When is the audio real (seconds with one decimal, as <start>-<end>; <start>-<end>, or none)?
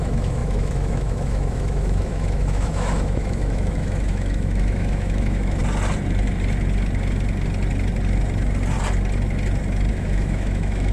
5.6-9.9